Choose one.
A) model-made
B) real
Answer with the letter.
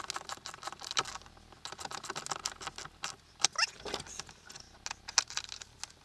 B